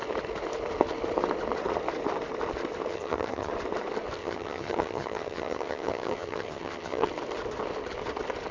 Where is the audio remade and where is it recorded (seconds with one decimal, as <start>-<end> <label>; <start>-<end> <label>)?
0.0-2.9 recorded; 2.9-3.5 remade; 3.5-4.2 recorded; 4.2-7.1 remade; 7.1-8.5 recorded